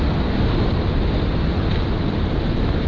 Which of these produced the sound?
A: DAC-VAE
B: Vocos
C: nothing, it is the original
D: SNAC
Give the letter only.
C